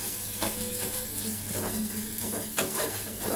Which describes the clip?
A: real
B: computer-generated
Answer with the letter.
B